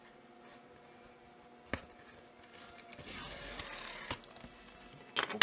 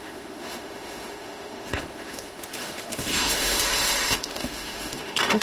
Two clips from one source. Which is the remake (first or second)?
second